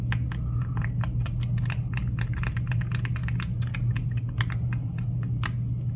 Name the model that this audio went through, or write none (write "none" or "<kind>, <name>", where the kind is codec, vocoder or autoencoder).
none